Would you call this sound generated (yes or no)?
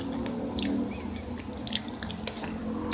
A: no